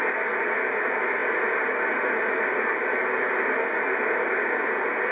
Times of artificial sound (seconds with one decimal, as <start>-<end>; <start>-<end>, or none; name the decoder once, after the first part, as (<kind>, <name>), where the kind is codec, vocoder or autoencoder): none